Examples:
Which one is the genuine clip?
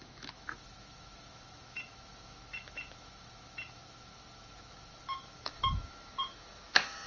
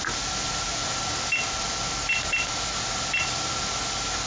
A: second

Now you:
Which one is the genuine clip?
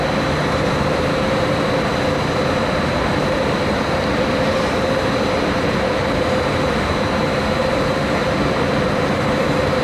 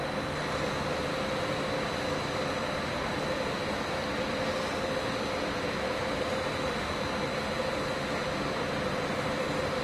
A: second